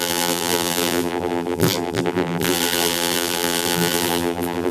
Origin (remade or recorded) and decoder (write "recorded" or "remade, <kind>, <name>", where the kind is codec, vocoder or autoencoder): remade, vocoder, BigVGAN v2